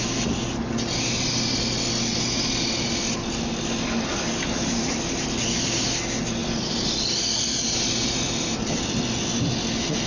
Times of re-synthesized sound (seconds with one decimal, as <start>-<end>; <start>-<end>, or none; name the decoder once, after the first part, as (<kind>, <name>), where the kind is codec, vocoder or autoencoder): 6.4-8.8 (vocoder, BigVGAN v2)